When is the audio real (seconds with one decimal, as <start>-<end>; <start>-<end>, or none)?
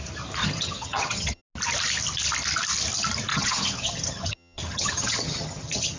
0.0-0.4; 1.4-3.3